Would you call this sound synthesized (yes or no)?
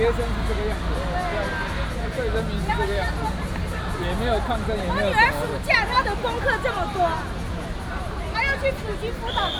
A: no